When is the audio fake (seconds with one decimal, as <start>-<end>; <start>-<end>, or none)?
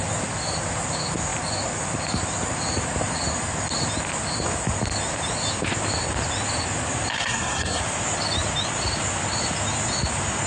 7.1-7.8